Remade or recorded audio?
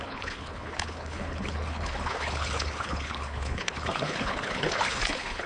remade